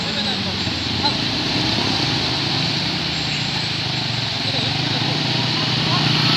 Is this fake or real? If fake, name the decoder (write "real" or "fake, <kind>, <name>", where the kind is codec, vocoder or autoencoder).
fake, vocoder, BigVGAN v2